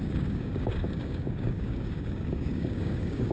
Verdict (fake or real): fake